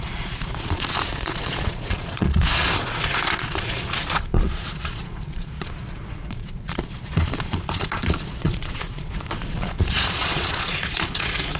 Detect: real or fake fake